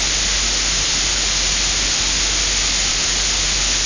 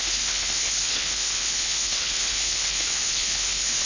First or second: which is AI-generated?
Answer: second